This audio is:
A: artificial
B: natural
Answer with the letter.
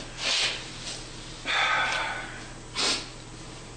B